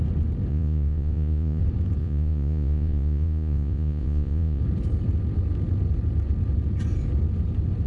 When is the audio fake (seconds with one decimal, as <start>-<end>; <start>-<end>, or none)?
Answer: 0.5-1.6; 2.0-4.6